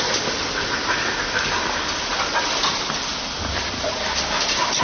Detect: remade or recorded recorded